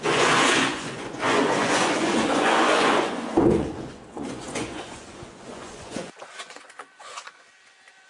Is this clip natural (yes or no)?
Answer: no